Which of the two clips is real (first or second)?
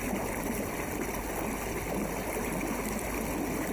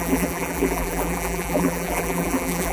first